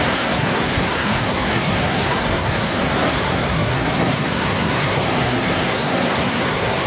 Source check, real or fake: fake